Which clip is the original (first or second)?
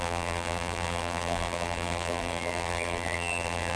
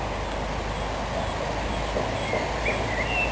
second